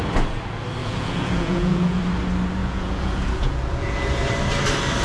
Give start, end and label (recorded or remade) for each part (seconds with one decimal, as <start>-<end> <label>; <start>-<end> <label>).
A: 0.0-0.8 recorded; 0.8-2.0 remade; 2.0-2.6 recorded; 2.6-4.2 remade; 4.2-5.0 recorded